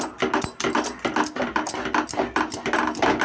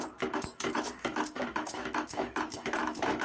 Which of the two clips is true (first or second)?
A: first